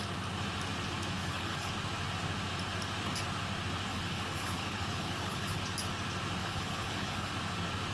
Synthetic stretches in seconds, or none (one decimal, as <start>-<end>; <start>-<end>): 1.2-1.7; 3.9-5.6; 6.4-7.3